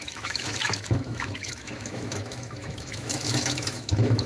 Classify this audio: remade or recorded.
remade